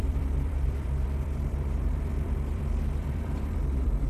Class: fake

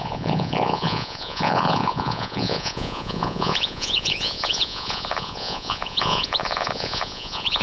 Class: fake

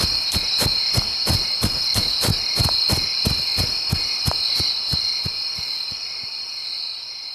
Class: real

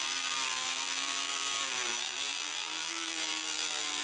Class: fake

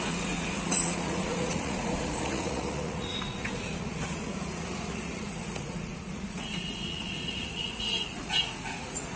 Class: fake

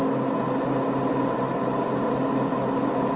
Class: real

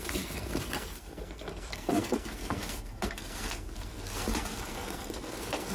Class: fake